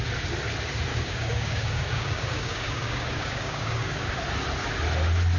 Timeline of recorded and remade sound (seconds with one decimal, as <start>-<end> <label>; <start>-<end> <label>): 0.0-0.9 recorded; 0.9-4.1 remade; 4.1-5.4 recorded